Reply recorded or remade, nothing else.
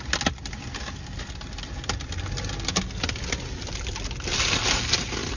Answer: recorded